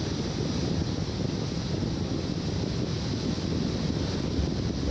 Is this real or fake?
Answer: real